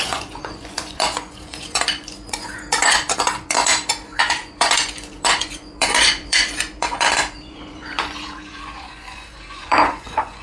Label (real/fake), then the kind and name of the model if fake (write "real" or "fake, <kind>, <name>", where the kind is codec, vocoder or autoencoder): fake, vocoder, Vocos